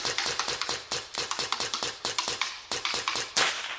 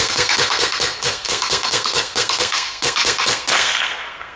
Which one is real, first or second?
first